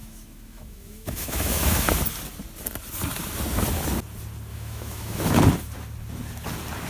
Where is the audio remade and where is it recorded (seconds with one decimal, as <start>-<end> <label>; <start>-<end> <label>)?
0.0-1.9 remade; 1.9-4.5 recorded; 4.5-5.4 remade; 5.4-6.9 recorded